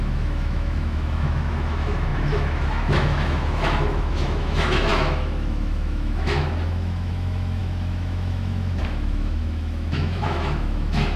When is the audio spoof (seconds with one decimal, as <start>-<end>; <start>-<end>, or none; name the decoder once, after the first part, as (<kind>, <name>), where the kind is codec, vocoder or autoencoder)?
0.0-11.2 (autoencoder, DAC-VAE)